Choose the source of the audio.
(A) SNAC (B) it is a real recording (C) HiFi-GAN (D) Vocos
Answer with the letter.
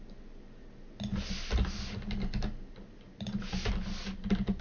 B